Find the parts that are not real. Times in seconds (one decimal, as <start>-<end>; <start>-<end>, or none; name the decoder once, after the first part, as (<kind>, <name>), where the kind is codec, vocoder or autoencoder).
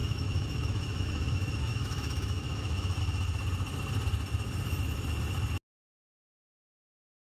0.0-3.0 (autoencoder, DAC-VAE)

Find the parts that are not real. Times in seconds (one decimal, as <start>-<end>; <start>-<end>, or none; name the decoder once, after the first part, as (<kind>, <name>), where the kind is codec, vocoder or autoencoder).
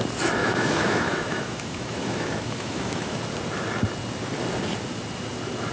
0.4-3.2 (autoencoder, DAC-VAE)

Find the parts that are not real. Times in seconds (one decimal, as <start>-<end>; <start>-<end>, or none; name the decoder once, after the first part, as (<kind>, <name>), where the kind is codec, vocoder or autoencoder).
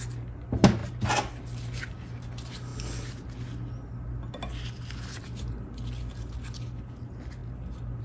none